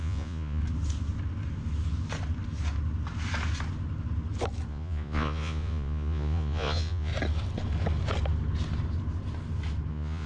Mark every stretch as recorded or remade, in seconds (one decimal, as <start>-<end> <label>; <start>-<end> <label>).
0.0-0.6 remade; 0.6-4.7 recorded; 4.7-7.1 remade; 7.1-9.9 recorded; 9.9-10.3 remade